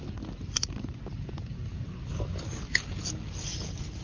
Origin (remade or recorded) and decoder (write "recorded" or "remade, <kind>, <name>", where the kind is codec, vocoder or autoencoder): recorded